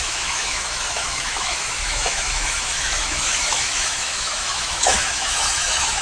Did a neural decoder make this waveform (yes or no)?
yes